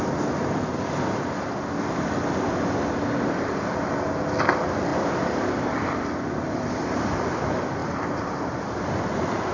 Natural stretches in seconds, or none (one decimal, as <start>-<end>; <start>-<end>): 0.7-3.7